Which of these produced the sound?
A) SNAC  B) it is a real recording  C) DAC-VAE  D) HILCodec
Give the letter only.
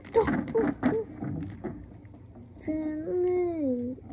B